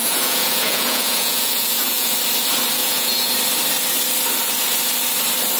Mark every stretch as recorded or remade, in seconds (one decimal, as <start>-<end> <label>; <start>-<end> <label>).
0.0-2.2 remade; 2.2-2.8 recorded; 2.8-3.3 remade; 3.3-5.6 recorded